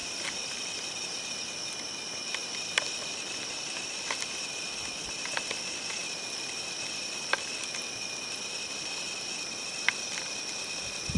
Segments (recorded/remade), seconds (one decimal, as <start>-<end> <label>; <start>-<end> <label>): 0.0-11.2 recorded

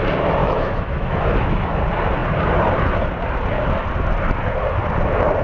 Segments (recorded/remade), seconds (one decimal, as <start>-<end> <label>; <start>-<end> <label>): 0.0-0.4 recorded; 0.4-1.8 remade; 1.8-5.4 recorded

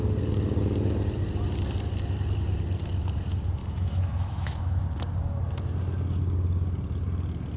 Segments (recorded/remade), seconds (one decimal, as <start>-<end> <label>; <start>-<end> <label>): 0.0-3.6 recorded; 3.6-4.8 remade; 4.8-7.6 recorded

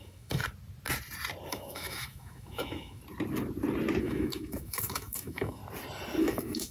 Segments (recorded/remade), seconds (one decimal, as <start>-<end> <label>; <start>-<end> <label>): 0.0-0.4 remade; 0.4-1.5 recorded; 1.5-3.0 remade; 3.0-4.0 recorded; 4.0-5.6 remade; 5.6-6.2 recorded; 6.2-6.7 remade

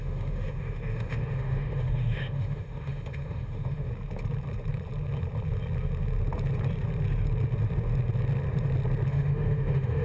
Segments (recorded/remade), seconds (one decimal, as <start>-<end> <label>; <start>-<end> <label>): 0.0-3.9 remade; 3.9-9.1 recorded; 9.1-10.0 remade

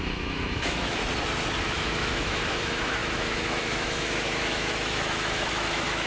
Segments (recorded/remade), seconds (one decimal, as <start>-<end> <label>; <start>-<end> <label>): 0.0-1.0 remade; 1.0-1.6 recorded; 1.6-6.1 remade

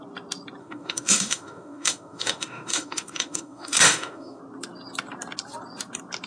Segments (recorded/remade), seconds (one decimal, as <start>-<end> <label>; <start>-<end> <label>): 0.0-0.6 recorded; 0.6-4.4 remade; 4.4-6.3 recorded